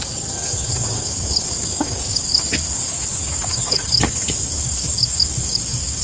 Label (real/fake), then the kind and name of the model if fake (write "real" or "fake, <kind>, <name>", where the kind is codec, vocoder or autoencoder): fake, codec, DAC